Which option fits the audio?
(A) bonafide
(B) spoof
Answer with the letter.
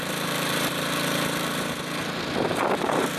B